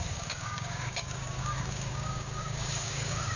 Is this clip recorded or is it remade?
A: remade